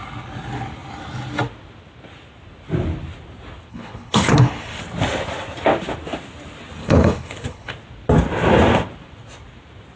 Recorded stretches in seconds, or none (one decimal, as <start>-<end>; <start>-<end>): 0.0-3.7; 4.8-6.8; 7.7-10.0